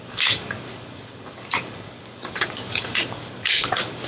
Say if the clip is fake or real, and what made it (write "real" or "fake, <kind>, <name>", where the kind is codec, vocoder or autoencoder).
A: fake, codec, DAC